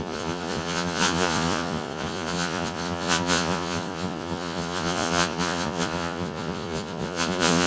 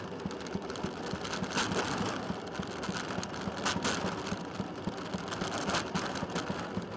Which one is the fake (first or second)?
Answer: first